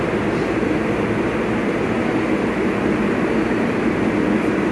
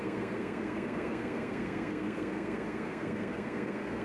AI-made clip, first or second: second